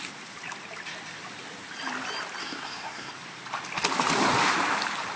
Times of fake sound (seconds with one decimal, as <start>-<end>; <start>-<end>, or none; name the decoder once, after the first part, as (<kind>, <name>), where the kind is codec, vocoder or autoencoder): 2.4-3.1 (codec, SNAC)